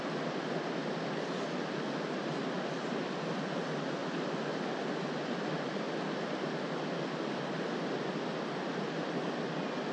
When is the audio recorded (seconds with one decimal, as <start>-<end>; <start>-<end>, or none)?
0.0-9.9